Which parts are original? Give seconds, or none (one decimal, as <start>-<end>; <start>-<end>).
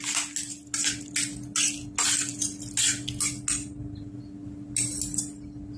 0.0-5.8